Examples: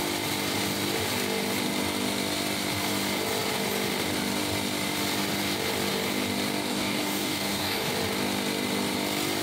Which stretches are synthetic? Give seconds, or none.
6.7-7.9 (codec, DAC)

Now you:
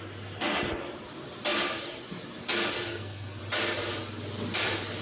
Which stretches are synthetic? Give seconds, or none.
2.9-3.4 (codec, SNAC)

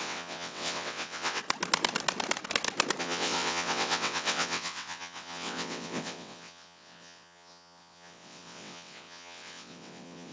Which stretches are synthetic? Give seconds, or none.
0.0-1.4 (vocoder, WaveNeXt); 3.0-10.3

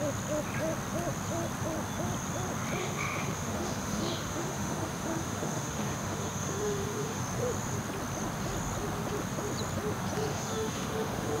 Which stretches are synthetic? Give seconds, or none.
2.8-7.2 (autoencoder, DAC-VAE); 10.3-11.4

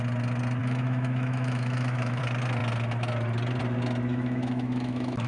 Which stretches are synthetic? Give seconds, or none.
0.6-2.2 (autoencoder, DAC-VAE); 4.1-5.3

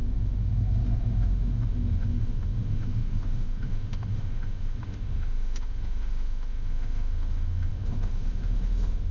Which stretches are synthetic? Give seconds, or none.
0.0-9.1 (autoencoder, DAC-VAE)